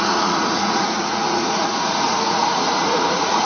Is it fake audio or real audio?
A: fake